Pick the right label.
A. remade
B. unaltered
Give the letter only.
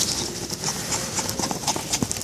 B